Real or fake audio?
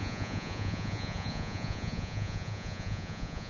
fake